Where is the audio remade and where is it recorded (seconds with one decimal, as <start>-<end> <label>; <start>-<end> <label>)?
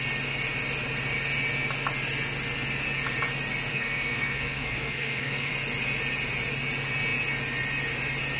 0.0-3.7 recorded; 3.7-5.5 remade; 5.5-8.4 recorded